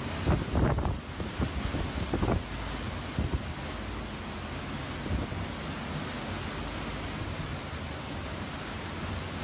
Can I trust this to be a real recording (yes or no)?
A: yes